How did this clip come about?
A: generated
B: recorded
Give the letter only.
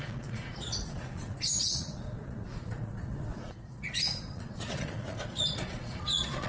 A